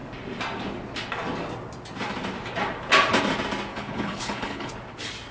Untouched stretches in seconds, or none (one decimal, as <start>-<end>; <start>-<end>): 0.0-3.7; 4.7-5.3